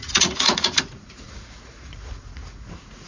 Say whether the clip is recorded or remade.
remade